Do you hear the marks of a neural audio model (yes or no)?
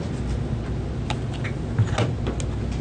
no